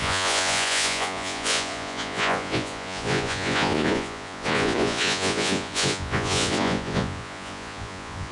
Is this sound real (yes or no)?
no